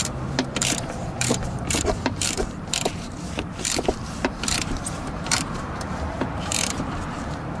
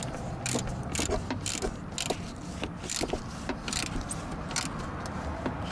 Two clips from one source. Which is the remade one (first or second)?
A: first